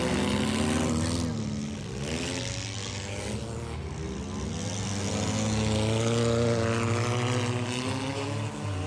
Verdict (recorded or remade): recorded